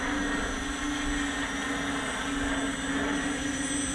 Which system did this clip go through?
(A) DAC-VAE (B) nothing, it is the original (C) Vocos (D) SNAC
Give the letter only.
B